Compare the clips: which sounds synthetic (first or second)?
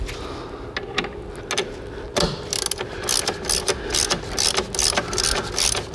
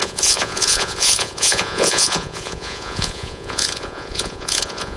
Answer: second